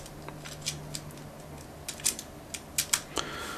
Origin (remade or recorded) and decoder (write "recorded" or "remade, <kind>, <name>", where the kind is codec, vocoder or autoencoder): recorded